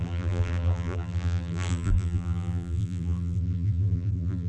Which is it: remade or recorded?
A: remade